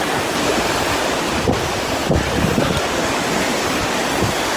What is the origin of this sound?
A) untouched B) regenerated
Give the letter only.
A